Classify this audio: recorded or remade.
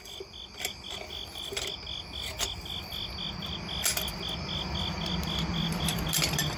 recorded